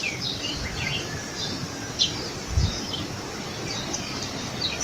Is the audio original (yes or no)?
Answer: yes